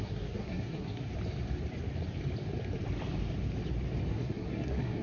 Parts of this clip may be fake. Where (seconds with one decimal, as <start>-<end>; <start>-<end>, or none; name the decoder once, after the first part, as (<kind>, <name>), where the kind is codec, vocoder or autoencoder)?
0.0-1.1 (codec, SNAC); 4.1-5.0